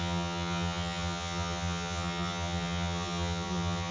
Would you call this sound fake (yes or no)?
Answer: yes